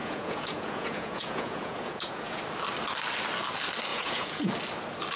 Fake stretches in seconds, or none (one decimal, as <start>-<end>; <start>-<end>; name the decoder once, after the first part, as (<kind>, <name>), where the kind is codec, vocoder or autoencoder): 0.0-2.4 (vocoder, Vocos); 3.9-4.5